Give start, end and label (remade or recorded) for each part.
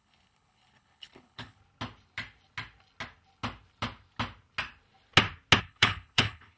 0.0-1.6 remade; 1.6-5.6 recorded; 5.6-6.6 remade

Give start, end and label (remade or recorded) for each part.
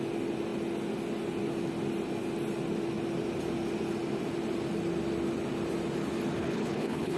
0.0-6.4 recorded; 6.4-7.2 remade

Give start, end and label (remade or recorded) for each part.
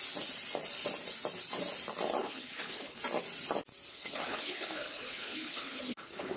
0.0-2.2 recorded; 2.2-3.0 remade; 3.0-3.9 recorded; 3.9-6.4 remade